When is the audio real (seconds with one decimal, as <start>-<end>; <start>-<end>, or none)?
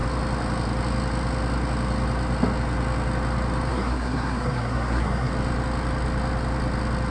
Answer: 0.0-3.7; 5.3-7.1